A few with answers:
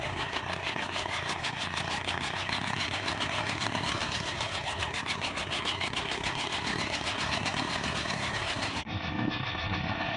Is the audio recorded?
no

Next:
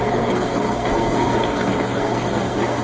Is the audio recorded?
no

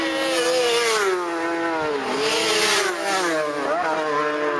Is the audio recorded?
yes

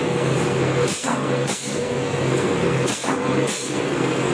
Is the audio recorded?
no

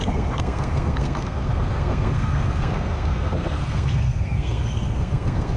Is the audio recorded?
no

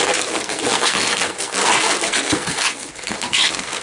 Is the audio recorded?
no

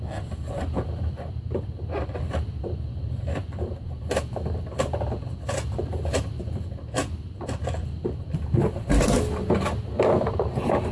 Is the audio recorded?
yes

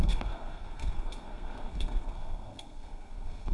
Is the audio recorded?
no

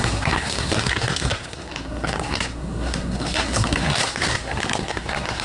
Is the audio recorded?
no